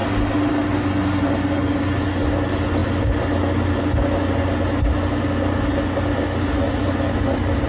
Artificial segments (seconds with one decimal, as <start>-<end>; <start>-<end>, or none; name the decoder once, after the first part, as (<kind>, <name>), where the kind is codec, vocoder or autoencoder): none